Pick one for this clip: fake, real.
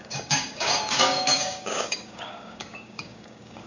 fake